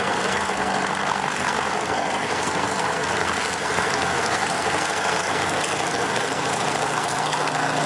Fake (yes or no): yes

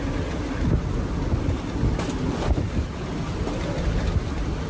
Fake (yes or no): no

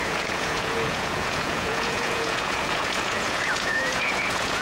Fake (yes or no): yes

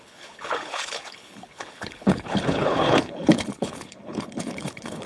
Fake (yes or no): yes